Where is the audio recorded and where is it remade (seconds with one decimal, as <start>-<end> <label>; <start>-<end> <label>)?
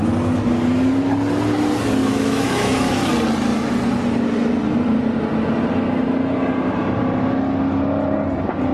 0.0-2.0 recorded; 2.0-3.1 remade; 3.1-8.7 recorded